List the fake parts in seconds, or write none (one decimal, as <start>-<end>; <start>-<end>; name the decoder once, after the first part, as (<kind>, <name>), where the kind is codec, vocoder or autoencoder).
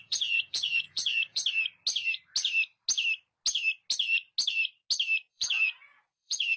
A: 0.0-1.4 (vocoder, Vocos); 5.3-6.6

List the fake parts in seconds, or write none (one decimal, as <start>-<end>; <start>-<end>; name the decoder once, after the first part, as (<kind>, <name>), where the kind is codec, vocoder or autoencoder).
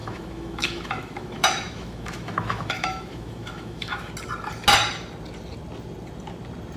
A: 0.0-4.1 (autoencoder, DAC-VAE)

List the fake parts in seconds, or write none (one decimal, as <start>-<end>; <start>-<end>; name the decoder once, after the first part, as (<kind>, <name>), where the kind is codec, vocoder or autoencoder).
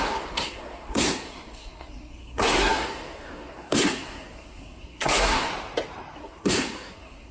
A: 0.0-5.5 (codec, SNAC); 6.2-7.3